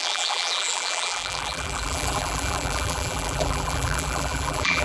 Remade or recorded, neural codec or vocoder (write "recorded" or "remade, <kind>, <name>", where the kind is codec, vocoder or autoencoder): remade, vocoder, BigVGAN v2